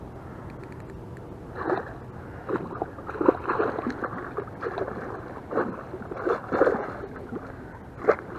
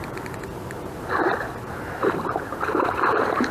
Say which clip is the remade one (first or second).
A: second